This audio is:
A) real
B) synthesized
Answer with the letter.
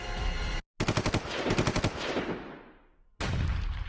A